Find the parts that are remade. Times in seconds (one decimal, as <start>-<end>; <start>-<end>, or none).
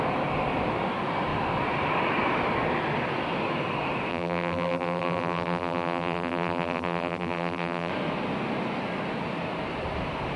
4.1-7.9